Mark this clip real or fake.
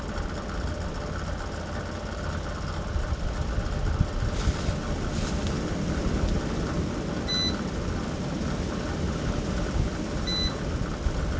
real